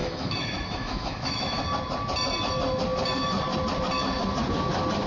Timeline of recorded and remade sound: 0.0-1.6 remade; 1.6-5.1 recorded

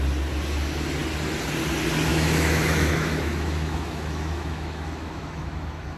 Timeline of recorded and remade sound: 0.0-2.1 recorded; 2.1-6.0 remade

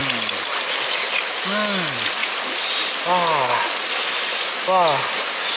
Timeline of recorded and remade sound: 0.0-5.6 recorded

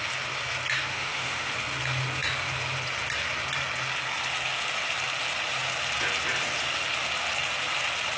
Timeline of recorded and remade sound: 0.0-0.9 recorded; 0.9-1.5 remade; 1.5-8.2 recorded

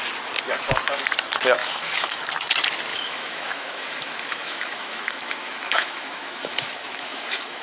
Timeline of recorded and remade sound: 0.0-1.6 recorded; 1.6-2.3 remade; 2.3-2.9 recorded; 2.9-7.6 remade